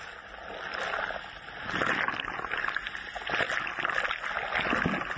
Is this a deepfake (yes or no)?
no